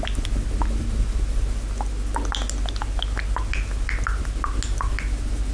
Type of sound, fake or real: real